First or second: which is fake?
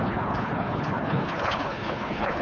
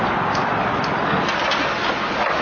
first